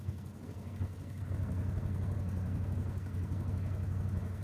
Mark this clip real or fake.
fake